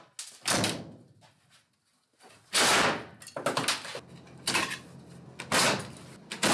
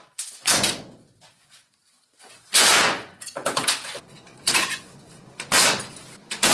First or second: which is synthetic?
second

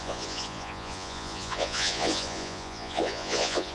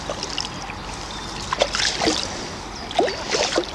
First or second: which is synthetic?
first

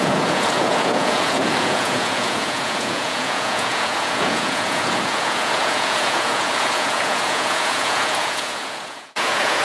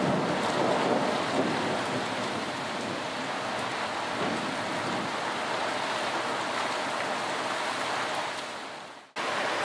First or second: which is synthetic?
first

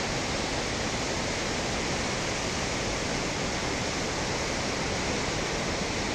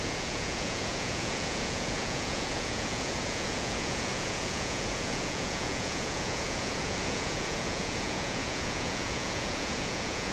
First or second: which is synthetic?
second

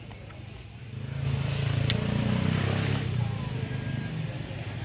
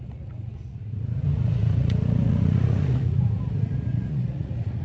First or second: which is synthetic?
second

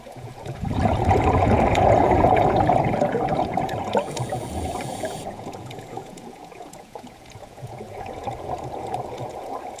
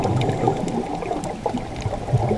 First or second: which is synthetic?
first